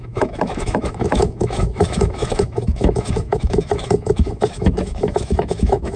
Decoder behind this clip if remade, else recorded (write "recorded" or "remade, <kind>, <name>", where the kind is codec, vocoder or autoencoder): remade, autoencoder, DAC-VAE